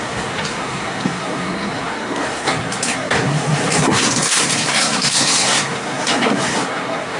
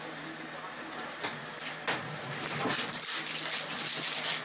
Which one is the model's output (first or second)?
first